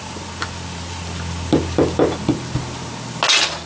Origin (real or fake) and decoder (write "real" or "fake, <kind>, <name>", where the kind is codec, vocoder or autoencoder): real